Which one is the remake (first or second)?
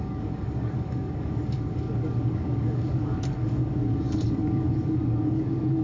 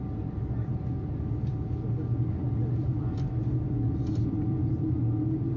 first